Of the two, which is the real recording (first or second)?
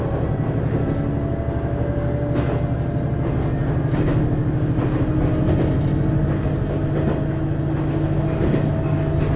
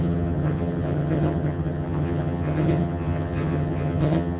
first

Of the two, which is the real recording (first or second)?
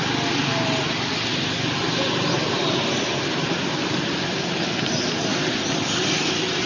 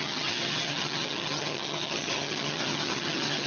first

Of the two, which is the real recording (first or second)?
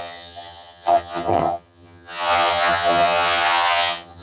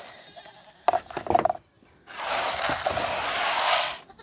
second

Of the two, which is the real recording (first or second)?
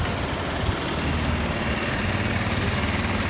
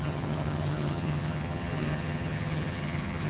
first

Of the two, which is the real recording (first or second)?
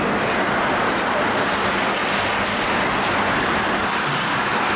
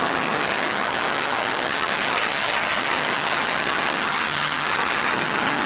first